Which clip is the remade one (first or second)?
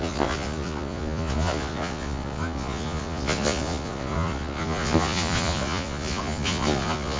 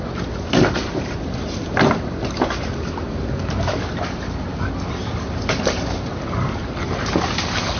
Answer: first